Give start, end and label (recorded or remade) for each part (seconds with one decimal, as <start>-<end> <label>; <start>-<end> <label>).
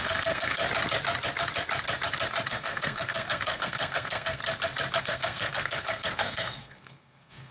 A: 0.0-0.6 remade; 0.6-2.5 recorded; 2.5-4.4 remade; 4.4-5.0 recorded; 5.0-7.5 remade